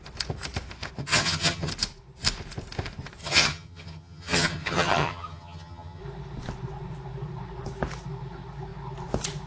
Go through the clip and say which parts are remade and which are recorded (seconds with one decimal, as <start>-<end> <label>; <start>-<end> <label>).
0.0-1.0 recorded; 1.0-1.7 remade; 1.7-3.2 recorded; 3.2-6.0 remade; 6.0-9.5 recorded